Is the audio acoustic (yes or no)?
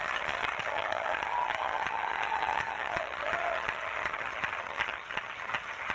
no